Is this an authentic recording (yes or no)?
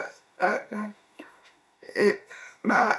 no